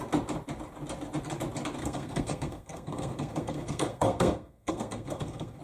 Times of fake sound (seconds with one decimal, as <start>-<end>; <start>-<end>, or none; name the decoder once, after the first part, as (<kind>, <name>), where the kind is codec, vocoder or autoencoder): 1.8-5.6 (codec, SNAC)